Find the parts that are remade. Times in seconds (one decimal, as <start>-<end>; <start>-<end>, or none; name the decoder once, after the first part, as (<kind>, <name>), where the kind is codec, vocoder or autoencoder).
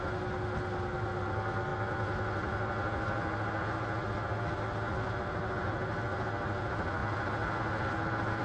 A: none